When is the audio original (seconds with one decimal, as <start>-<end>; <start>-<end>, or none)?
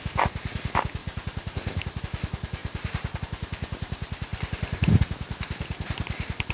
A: 0.0-1.0; 2.0-2.6; 3.2-4.3; 5.0-6.5